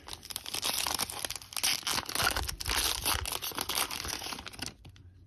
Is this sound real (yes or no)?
yes